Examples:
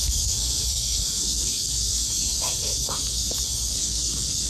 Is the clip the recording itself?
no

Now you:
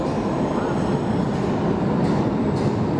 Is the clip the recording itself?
yes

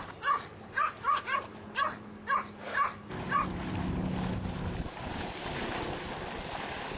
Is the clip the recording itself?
yes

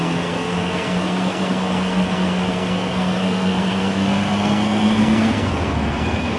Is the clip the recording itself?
no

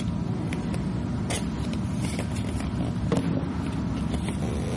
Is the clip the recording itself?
yes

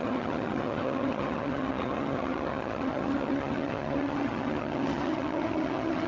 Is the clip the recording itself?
no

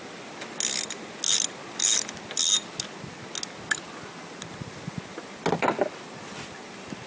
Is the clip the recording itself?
yes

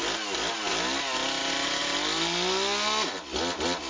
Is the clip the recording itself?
yes